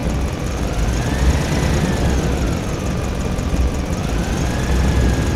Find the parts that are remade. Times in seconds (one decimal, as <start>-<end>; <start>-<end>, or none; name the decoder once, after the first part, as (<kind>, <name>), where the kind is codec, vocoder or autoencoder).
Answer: none